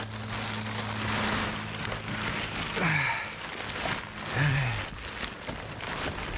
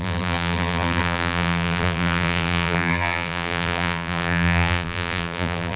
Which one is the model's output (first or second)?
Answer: second